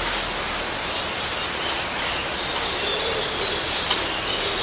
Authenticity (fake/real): real